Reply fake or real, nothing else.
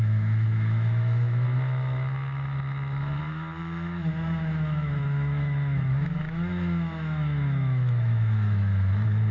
fake